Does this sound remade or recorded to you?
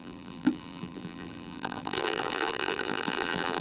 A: remade